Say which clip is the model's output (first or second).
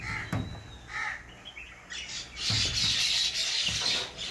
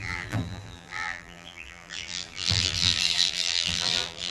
second